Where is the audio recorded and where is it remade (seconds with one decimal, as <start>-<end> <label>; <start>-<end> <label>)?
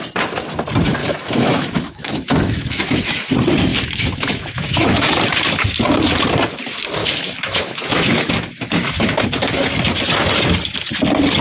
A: 0.0-1.0 recorded; 1.0-3.3 remade; 3.3-3.7 recorded; 3.7-5.2 remade; 5.2-7.0 recorded; 7.0-9.2 remade; 9.2-11.4 recorded